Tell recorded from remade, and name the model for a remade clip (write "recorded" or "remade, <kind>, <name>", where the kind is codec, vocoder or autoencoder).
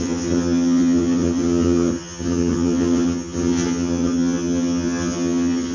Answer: remade, vocoder, HiFi-GAN